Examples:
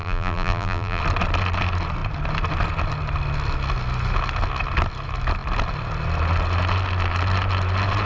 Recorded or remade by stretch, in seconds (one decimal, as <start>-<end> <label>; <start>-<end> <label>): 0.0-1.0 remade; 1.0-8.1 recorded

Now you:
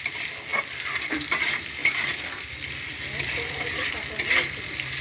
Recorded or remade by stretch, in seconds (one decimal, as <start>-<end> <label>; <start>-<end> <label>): 0.0-1.8 recorded; 1.8-3.9 remade; 3.9-5.0 recorded

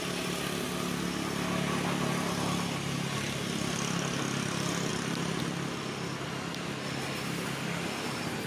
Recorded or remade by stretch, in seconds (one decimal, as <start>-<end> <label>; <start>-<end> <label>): 0.0-4.9 recorded; 4.9-5.4 remade; 5.4-8.5 recorded

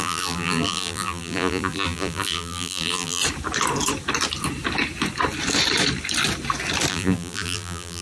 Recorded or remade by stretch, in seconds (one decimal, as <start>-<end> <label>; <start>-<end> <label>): 0.0-3.2 remade; 3.2-6.9 recorded; 6.9-8.0 remade

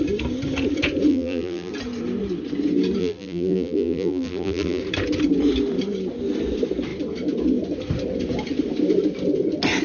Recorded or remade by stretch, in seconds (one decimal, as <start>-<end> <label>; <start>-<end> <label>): 0.0-1.1 recorded; 1.1-1.7 remade; 1.7-3.0 recorded; 3.0-4.8 remade; 4.8-9.8 recorded